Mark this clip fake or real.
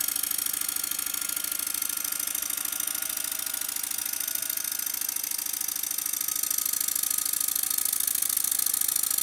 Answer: real